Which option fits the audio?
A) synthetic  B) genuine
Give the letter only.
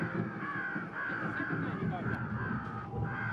B